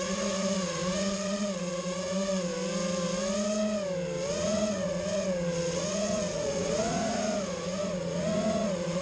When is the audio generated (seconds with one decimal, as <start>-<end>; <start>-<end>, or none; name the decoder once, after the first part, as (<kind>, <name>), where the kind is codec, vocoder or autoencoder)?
0.0-2.5 (vocoder, Vocos); 4.3-9.0